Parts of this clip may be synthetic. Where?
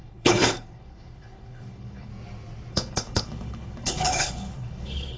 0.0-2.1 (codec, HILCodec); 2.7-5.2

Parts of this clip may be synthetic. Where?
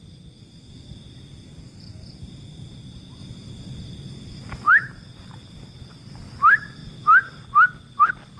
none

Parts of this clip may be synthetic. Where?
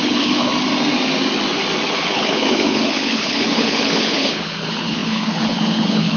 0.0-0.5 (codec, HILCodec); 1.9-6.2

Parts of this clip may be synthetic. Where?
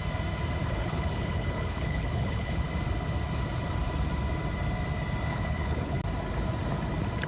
0.6-2.7 (codec, HILCodec); 5.3-6.0